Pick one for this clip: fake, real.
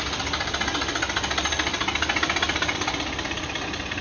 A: fake